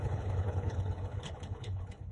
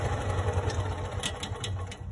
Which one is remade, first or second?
first